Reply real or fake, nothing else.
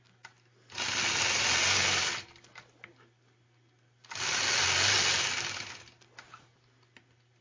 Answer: real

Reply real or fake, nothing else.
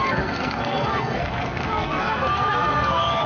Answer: fake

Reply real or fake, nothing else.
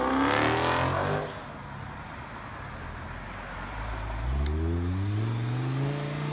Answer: real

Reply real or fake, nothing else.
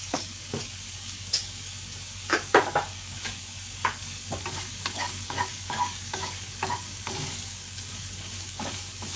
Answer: fake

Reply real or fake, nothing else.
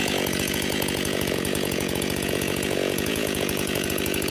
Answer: fake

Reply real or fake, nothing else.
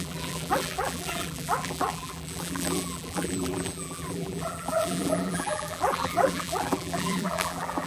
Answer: fake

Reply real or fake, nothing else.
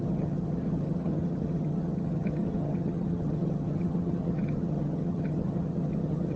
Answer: fake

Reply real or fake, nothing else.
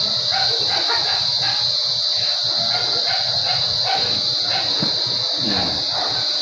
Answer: real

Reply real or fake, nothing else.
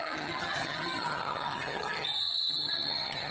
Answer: fake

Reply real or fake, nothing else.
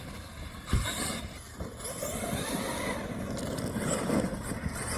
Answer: real